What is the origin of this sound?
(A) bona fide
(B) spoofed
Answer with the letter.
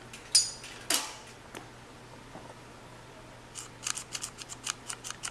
A